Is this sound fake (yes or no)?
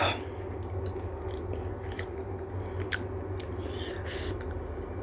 no